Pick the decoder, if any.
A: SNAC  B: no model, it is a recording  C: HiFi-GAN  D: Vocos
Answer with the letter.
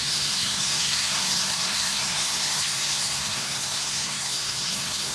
A